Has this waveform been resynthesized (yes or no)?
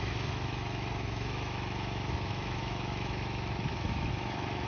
yes